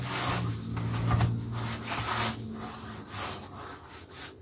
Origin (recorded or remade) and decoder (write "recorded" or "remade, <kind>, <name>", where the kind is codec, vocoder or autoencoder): recorded